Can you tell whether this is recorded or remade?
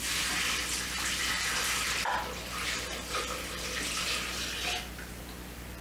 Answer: remade